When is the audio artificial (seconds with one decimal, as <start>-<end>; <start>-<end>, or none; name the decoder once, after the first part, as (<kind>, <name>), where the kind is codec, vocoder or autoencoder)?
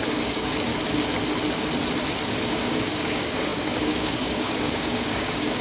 0.0-0.7 (codec, DAC); 2.5-5.6